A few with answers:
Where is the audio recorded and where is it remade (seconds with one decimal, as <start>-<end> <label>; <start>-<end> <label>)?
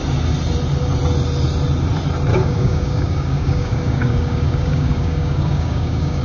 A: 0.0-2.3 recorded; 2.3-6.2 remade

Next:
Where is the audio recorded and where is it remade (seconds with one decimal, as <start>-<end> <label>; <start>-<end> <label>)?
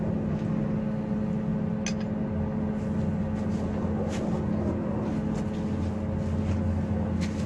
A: 0.0-7.5 recorded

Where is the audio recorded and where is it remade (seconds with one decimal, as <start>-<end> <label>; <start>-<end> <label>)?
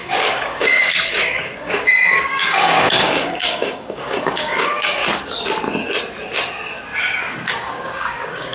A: 0.0-5.0 remade; 5.0-7.5 recorded; 7.5-8.5 remade